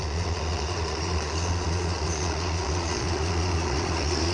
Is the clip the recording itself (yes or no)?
no